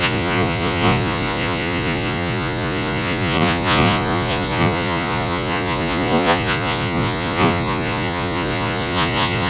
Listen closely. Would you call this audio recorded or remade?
remade